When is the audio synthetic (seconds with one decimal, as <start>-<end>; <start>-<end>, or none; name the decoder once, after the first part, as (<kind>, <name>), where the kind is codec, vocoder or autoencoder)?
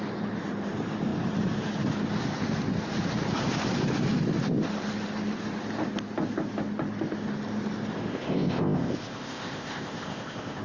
8.1-10.6 (codec, ZipCodec)